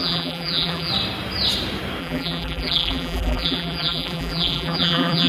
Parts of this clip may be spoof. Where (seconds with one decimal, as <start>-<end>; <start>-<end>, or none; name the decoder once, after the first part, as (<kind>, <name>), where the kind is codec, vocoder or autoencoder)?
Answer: 0.0-0.9 (vocoder, BigVGAN v2); 2.0-5.3